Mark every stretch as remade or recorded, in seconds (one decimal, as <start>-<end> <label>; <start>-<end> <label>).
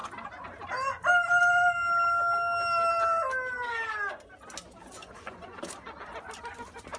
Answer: 0.0-5.0 recorded; 5.0-5.6 remade; 5.6-7.0 recorded